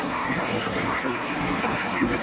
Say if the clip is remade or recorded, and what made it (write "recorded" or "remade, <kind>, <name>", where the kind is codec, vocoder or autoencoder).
remade, codec, SNAC